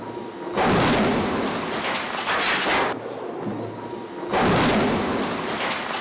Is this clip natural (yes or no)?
yes